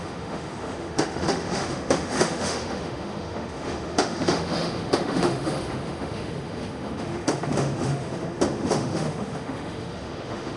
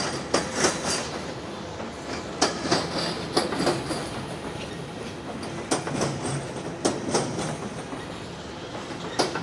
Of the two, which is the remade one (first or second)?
first